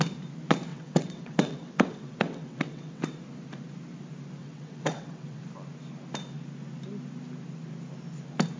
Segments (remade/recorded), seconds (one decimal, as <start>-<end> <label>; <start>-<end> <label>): 0.0-0.7 recorded; 0.7-3.0 remade; 3.0-4.4 recorded; 4.4-5.4 remade; 5.4-8.6 recorded